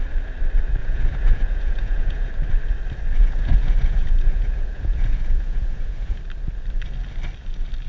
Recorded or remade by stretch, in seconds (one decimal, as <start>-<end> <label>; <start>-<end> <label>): 0.0-0.8 recorded; 0.8-2.3 remade; 2.3-3.2 recorded; 3.2-6.2 remade; 6.2-7.9 recorded